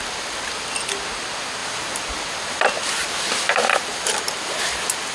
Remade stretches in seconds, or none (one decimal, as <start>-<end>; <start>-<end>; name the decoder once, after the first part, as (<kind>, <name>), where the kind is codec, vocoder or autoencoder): none